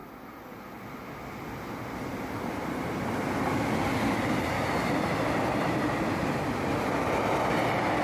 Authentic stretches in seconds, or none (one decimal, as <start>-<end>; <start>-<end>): 0.0-8.0